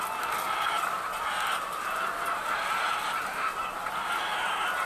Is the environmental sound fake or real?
real